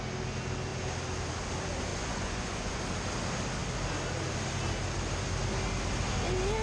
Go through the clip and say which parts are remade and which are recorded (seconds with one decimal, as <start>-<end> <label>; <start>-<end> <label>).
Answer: 0.0-1.9 recorded; 1.9-2.8 remade; 2.8-6.6 recorded